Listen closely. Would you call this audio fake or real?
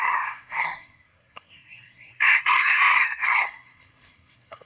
fake